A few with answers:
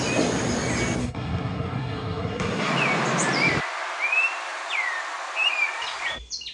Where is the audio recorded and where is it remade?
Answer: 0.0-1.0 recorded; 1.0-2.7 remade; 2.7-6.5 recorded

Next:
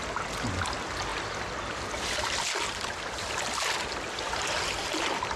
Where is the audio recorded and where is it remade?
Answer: 0.0-5.4 recorded

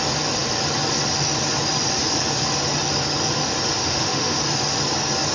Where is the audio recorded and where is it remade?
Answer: 0.0-3.8 recorded; 3.8-4.4 remade; 4.4-5.3 recorded

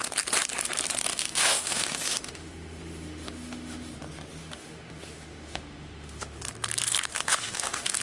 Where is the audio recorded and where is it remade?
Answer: 0.0-1.1 recorded; 1.1-3.9 remade; 3.9-4.4 recorded; 4.4-6.4 remade; 6.4-7.1 recorded; 7.1-8.0 remade

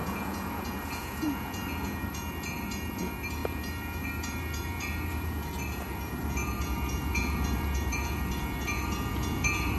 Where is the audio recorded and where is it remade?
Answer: 0.0-9.8 remade

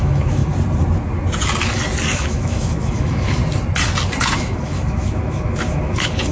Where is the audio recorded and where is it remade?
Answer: 0.0-0.4 remade; 0.4-2.1 recorded; 2.1-3.4 remade; 3.4-4.2 recorded; 4.2-6.3 remade